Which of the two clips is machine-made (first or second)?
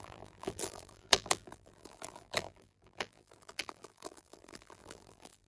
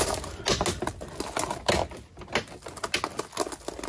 first